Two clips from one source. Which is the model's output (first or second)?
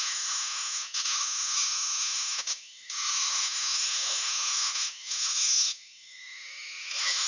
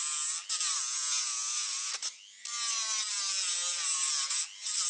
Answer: first